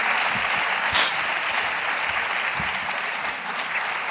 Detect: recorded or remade recorded